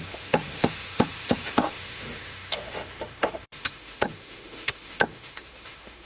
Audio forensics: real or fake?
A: fake